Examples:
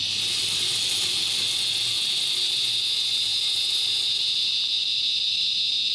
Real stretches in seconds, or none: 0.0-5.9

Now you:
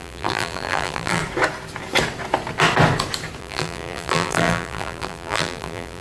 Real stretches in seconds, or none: 1.2-3.4

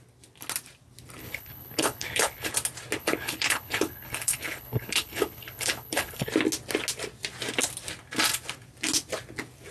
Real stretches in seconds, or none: 0.0-1.2; 2.5-3.0; 6.3-9.7

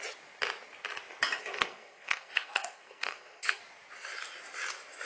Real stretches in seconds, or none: 0.0-1.4; 3.6-5.1

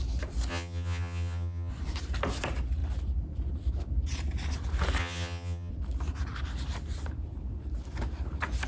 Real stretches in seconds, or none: 0.0-0.5; 1.7-5.0; 5.7-8.7